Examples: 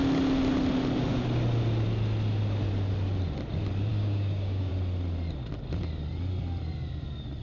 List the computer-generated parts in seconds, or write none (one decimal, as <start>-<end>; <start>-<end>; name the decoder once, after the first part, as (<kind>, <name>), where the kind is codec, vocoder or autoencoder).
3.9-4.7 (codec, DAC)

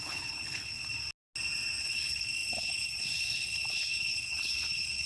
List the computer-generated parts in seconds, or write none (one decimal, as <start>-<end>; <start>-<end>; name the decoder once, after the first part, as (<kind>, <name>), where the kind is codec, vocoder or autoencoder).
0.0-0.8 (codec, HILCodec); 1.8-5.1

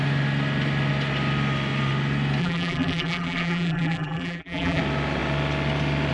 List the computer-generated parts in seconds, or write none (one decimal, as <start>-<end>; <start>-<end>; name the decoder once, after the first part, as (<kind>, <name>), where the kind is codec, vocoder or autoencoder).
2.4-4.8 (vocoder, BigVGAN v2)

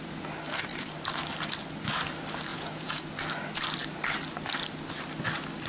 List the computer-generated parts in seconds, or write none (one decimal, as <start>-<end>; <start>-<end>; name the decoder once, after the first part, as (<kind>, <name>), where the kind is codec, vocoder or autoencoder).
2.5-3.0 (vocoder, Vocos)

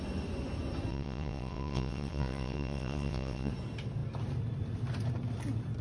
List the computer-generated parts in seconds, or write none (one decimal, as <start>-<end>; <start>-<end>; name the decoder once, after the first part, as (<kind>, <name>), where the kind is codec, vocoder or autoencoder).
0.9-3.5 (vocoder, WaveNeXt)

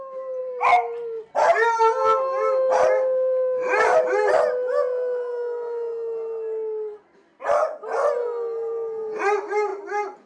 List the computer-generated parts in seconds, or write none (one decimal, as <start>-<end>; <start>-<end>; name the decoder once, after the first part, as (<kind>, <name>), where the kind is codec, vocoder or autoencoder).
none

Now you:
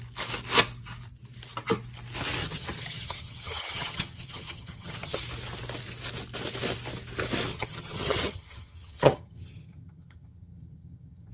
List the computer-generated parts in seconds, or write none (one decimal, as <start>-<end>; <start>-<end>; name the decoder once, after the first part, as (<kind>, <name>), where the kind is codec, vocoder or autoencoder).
2.4-5.2 (vocoder, HiFi-GAN); 7.5-11.3

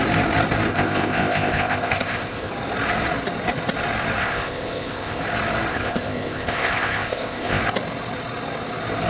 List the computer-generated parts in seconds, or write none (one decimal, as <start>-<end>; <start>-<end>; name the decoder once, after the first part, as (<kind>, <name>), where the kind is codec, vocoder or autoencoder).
0.7-2.5 (codec, ZipCodec); 4.2-5.2; 5.7-7.6